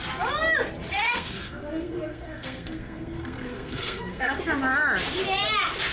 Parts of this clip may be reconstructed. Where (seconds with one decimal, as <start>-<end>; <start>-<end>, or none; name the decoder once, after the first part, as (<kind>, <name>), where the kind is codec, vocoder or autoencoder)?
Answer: 0.9-4.4 (codec, SNAC)